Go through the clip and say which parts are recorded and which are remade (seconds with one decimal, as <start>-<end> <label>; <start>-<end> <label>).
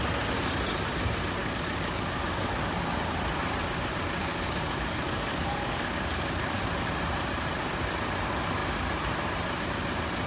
0.0-1.4 recorded; 1.4-2.9 remade; 2.9-4.2 recorded; 4.2-6.6 remade; 6.6-10.3 recorded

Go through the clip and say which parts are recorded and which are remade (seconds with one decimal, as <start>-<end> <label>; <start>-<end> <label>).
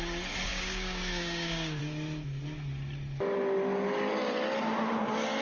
0.0-0.5 recorded; 0.5-1.8 remade; 1.8-5.4 recorded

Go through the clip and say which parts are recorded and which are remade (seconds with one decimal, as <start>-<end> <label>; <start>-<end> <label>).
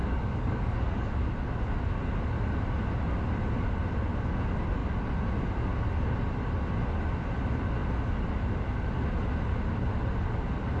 0.0-1.1 remade; 1.1-10.8 recorded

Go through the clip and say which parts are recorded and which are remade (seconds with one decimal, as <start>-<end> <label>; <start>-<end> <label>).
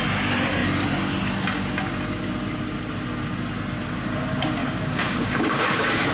0.0-4.6 recorded; 4.6-6.1 remade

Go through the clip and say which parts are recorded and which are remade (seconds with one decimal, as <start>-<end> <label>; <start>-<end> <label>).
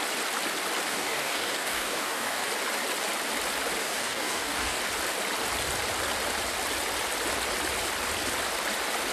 0.0-0.9 recorded; 0.9-2.5 remade; 2.5-3.8 recorded; 3.8-4.8 remade; 4.8-9.1 recorded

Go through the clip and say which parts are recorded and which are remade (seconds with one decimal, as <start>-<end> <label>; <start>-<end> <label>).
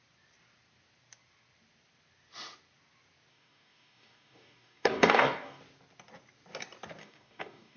0.0-3.3 recorded; 3.3-5.6 remade; 5.6-7.0 recorded; 7.0-7.8 remade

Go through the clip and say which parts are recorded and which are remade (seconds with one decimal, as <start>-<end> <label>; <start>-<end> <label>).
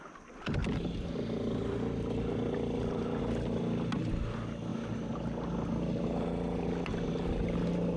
0.0-8.0 recorded